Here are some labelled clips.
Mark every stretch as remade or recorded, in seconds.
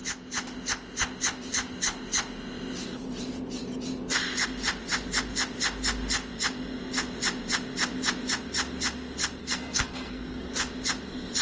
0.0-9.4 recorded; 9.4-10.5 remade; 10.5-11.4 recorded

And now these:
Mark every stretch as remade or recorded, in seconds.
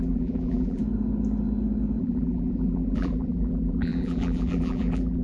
0.0-0.8 remade; 0.8-2.0 recorded; 2.0-5.2 remade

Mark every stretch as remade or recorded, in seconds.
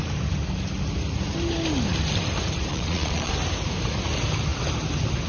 0.0-2.7 recorded; 2.7-3.3 remade; 3.3-5.3 recorded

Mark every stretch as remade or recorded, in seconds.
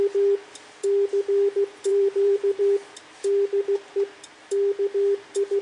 0.0-1.9 recorded; 1.9-2.6 remade; 2.6-5.6 recorded